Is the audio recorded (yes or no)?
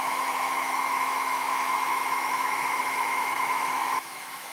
no